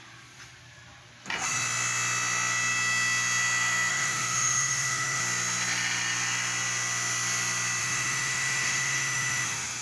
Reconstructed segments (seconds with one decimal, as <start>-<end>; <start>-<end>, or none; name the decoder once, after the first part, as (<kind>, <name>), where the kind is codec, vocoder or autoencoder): 3.9-5.2 (autoencoder, DAC-VAE); 7.8-9.8